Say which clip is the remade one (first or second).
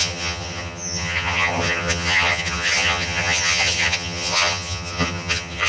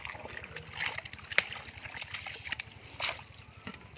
first